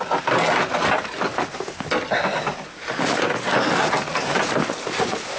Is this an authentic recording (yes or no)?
yes